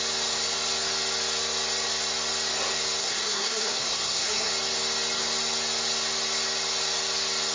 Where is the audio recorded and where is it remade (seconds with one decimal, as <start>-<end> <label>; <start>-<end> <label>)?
0.0-3.0 recorded; 3.0-4.5 remade; 4.5-7.5 recorded